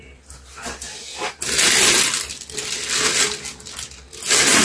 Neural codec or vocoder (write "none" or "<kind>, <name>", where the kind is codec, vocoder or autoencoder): none